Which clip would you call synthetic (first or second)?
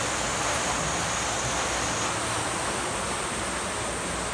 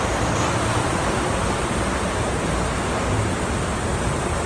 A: second